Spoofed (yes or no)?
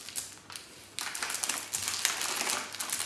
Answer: no